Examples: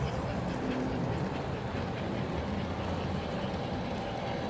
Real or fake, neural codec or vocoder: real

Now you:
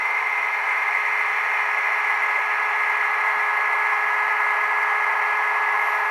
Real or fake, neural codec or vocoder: real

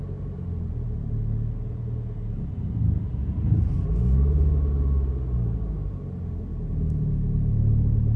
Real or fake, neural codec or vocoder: real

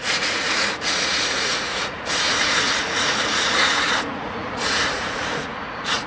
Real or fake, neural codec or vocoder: fake, vocoder, Vocos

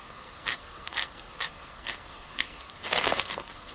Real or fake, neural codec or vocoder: fake, codec, SNAC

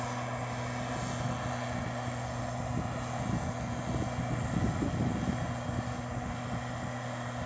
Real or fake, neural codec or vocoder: real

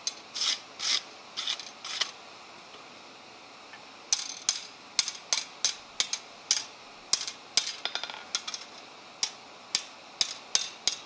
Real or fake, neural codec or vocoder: real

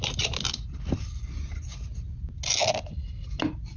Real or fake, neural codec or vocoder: real